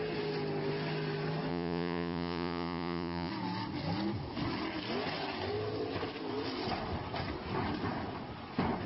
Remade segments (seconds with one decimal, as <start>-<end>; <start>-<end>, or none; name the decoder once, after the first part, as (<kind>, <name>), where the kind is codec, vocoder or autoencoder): 1.5-3.3 (vocoder, Vocos)